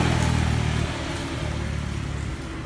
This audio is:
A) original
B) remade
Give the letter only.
A